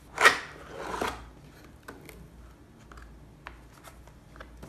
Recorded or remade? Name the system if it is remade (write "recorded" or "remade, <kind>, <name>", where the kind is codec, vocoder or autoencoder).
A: recorded